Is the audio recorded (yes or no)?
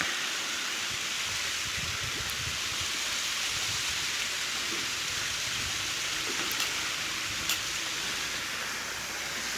yes